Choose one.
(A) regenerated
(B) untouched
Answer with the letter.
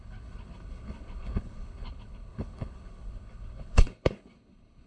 A